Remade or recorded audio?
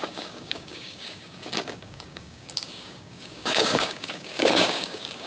remade